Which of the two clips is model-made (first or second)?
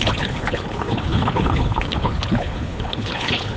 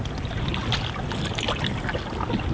first